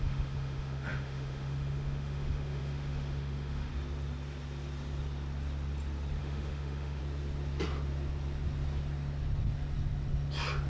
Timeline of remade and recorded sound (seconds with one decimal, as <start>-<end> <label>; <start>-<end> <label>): 0.0-3.7 remade; 3.7-6.2 recorded; 6.2-7.0 remade; 7.0-10.7 recorded